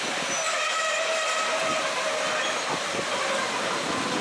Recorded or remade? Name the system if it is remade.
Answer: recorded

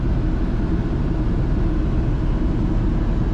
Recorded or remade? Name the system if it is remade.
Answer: recorded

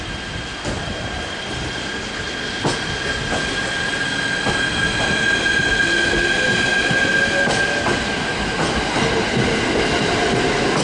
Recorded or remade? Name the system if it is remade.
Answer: recorded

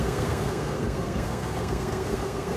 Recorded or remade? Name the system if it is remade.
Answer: remade, codec, SNAC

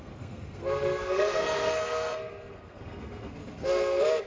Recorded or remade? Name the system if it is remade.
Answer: remade, codec, SNAC